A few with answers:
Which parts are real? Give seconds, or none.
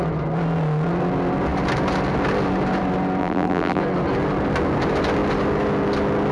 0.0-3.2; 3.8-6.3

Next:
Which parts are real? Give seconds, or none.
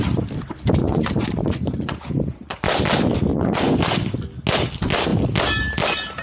0.0-0.8; 2.1-3.3; 3.8-6.2